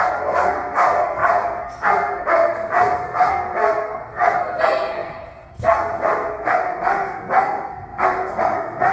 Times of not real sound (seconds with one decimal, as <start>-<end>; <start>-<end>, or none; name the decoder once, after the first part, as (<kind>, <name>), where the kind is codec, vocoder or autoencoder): 0.0-8.9 (codec, SNAC)